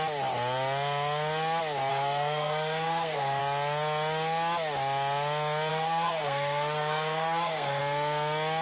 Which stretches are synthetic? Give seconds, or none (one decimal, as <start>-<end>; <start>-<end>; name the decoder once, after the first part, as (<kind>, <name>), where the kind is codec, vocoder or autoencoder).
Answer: 1.9-3.4 (codec, SNAC); 5.7-7.8

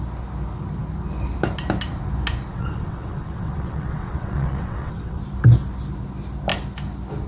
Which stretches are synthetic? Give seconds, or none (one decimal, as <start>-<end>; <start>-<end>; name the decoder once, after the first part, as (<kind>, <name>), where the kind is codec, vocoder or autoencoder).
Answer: 2.5-5.2 (vocoder, WaveNeXt)